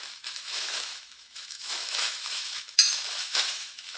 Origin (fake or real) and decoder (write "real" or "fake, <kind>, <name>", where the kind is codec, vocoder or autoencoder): fake, autoencoder, DAC-VAE